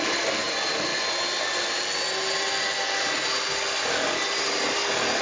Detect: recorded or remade recorded